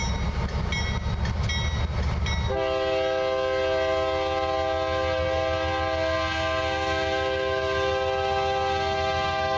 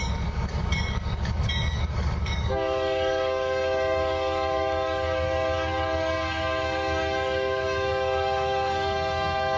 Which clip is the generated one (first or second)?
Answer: second